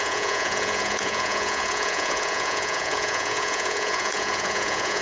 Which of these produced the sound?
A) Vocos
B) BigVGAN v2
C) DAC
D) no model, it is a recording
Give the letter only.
A